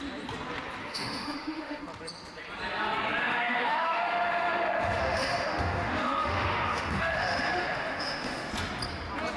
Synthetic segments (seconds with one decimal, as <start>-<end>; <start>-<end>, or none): 0.8-1.8; 3.2-8.5